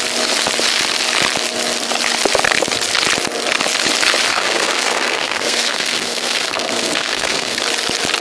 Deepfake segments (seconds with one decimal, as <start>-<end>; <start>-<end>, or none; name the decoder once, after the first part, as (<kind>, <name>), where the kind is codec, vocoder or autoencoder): 4.3-7.6 (codec, SNAC)

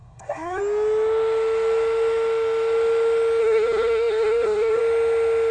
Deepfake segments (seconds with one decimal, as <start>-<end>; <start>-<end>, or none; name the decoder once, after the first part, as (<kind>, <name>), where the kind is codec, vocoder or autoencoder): 0.0-0.6 (codec, SNAC); 3.4-4.8